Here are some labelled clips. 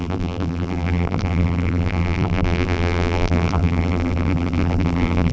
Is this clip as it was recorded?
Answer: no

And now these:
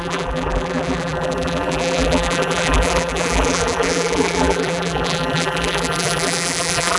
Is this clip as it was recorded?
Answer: no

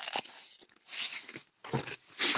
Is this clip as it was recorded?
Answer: yes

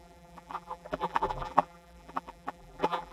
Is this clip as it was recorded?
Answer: no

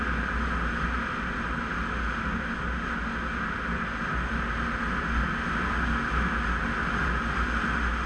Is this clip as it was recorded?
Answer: yes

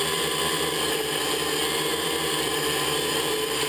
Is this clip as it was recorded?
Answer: no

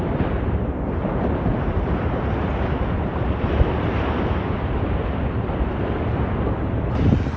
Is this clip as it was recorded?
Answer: no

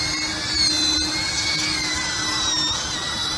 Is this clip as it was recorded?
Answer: yes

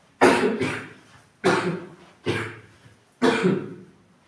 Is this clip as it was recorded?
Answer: no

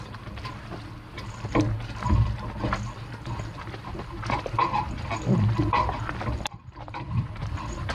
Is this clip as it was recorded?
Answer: no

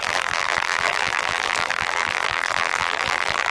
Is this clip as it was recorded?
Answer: no